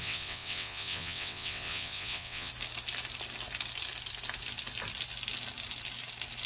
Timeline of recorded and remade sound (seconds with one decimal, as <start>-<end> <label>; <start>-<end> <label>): 0.0-2.5 remade; 2.5-6.5 recorded